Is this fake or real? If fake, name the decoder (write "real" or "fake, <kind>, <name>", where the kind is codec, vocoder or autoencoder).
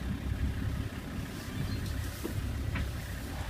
real